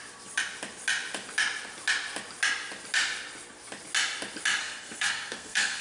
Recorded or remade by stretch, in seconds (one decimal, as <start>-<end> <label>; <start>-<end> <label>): 0.0-4.6 recorded; 4.6-5.8 remade